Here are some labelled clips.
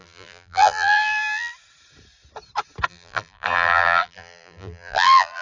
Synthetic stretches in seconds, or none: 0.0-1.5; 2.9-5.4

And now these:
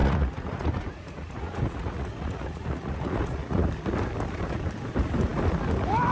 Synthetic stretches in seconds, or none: 0.0-3.7

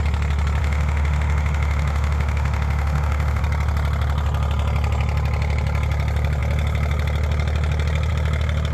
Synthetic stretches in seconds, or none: 0.6-3.4

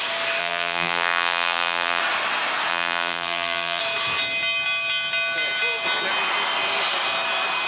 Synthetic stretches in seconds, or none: 0.4-2.0; 2.7-3.8